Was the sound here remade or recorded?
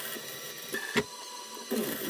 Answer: remade